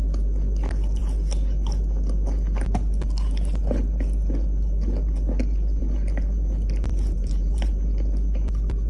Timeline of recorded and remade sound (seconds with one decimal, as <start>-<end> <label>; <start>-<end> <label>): 0.0-6.9 recorded; 6.9-7.8 remade; 7.8-8.9 recorded